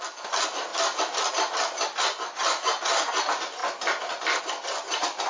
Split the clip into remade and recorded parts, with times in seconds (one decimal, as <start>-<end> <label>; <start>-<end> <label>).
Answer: 0.0-5.3 recorded